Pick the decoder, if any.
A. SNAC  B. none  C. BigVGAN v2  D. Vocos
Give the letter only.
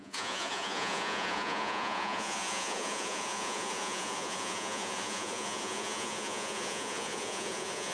D